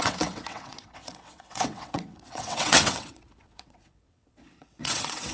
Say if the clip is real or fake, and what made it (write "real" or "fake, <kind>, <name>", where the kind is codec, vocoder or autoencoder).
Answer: fake, vocoder, WaveNeXt